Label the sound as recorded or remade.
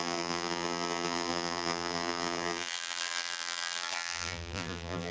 remade